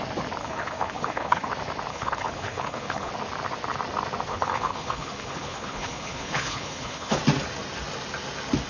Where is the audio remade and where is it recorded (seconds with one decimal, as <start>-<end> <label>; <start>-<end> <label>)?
0.0-0.4 recorded; 0.4-1.5 remade; 1.5-1.9 recorded; 1.9-3.1 remade; 3.1-4.3 recorded; 4.3-7.2 remade; 7.2-8.7 recorded